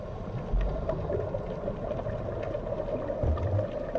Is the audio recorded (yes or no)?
yes